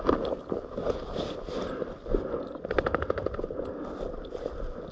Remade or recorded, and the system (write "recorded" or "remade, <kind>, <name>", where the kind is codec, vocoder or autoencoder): recorded